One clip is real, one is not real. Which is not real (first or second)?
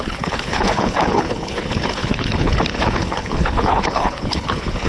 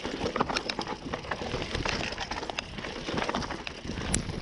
first